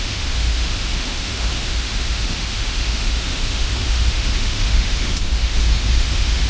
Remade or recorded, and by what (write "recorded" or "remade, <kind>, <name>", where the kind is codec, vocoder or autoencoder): remade, autoencoder, DAC-VAE